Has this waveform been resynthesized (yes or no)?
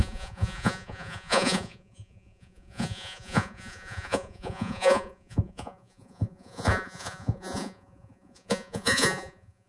yes